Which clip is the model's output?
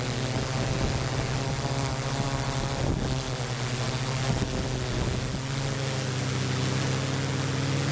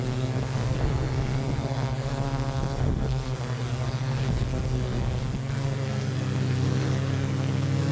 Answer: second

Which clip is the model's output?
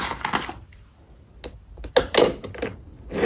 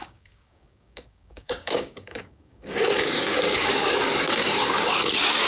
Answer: second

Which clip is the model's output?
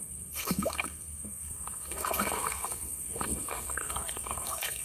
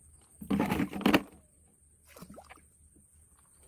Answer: first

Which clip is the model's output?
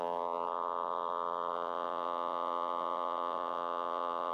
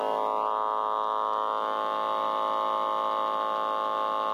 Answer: first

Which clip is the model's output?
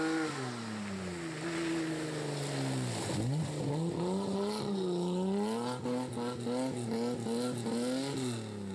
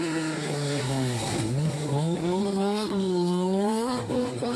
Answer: second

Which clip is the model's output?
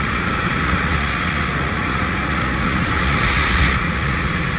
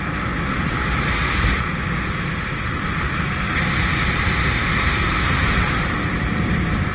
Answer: first